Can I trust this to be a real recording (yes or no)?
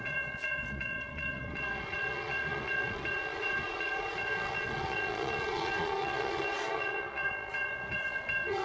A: no